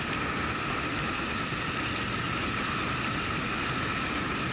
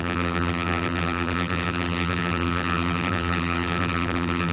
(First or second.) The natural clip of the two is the first